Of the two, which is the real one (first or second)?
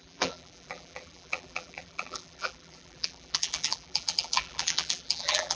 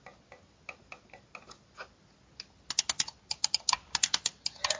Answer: second